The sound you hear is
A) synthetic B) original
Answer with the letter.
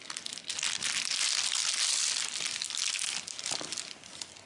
B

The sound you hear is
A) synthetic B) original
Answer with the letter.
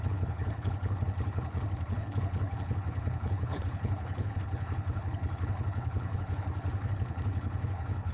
A